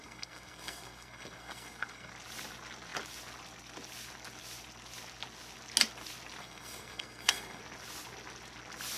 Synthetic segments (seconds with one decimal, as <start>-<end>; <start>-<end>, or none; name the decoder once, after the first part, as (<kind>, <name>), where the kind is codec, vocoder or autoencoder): 0.0-2.1 (codec, SNAC); 6.4-7.6